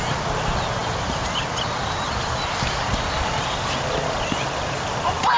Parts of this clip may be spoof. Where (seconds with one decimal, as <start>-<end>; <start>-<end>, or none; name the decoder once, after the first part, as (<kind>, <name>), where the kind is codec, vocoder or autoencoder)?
none